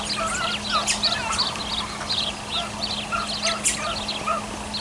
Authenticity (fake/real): real